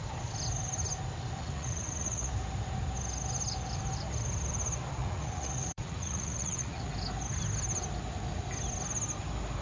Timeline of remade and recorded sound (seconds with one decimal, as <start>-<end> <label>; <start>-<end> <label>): 0.0-1.4 recorded; 1.4-2.3 remade; 2.3-5.0 recorded; 5.0-6.9 remade; 6.9-9.6 recorded